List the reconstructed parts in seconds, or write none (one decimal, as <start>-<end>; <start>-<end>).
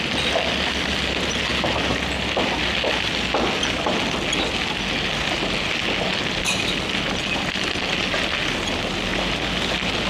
none